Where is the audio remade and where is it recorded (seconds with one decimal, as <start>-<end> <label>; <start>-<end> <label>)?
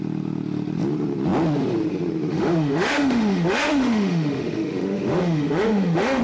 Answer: 0.0-2.3 recorded; 2.3-6.2 remade